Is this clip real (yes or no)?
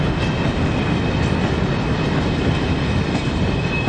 yes